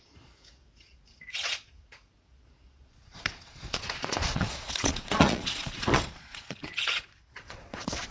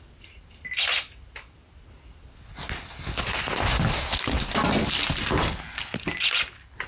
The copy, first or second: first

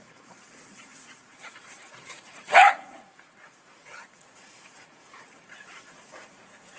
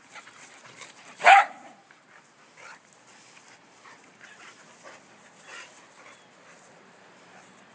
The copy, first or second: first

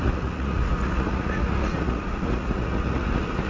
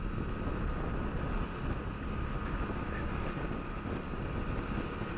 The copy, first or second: first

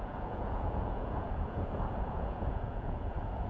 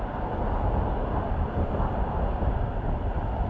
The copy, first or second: first